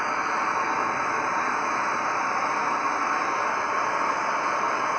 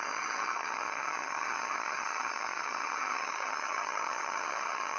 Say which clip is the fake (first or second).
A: second